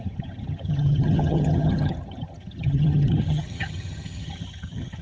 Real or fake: fake